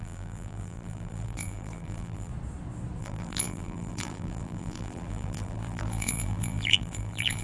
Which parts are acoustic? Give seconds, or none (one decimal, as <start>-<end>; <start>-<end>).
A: 2.3-3.0